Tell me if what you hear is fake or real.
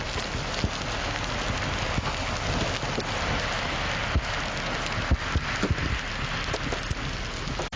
real